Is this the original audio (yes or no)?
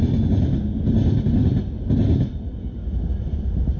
yes